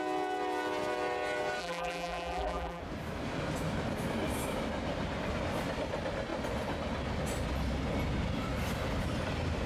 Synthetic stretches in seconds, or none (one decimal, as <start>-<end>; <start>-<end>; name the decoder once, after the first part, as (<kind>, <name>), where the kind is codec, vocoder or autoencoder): 1.6-2.8 (vocoder, BigVGAN v2)